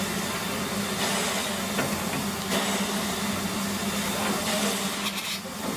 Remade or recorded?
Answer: recorded